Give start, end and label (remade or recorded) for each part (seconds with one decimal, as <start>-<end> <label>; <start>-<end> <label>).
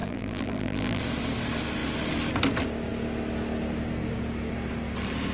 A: 0.0-1.0 remade; 1.0-5.3 recorded